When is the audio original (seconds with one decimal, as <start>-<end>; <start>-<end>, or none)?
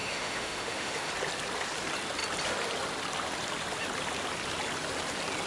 1.1-5.5